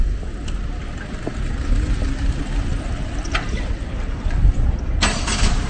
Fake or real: real